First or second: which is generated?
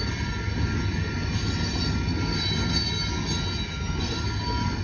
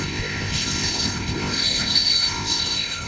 second